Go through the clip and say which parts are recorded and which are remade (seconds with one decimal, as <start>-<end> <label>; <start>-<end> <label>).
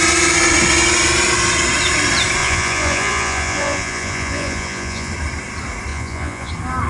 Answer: 0.0-2.4 recorded; 2.4-5.1 remade; 5.1-5.9 recorded; 5.9-6.5 remade; 6.5-6.9 recorded